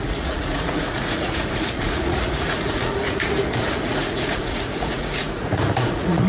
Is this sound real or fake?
fake